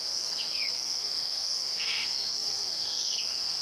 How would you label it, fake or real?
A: fake